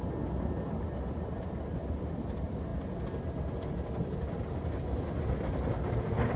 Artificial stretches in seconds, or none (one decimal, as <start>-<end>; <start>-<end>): none